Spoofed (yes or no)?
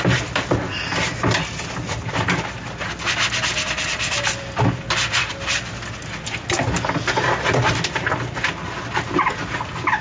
no